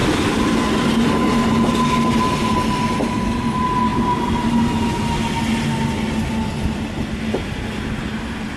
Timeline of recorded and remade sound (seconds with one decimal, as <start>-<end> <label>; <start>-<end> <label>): 0.0-8.6 recorded